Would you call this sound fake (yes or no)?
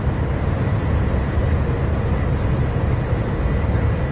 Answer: no